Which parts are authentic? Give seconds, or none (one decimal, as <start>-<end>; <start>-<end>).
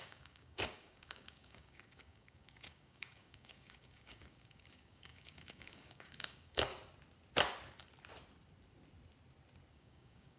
6.7-9.7